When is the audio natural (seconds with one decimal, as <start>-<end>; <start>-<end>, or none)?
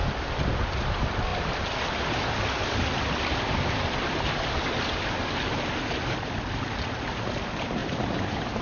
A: 0.0-7.8